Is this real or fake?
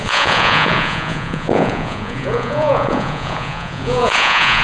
fake